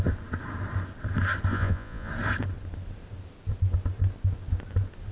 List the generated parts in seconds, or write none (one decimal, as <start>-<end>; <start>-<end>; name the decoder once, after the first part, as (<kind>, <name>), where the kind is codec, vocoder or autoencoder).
1.5-2.1 (vocoder, Vocos)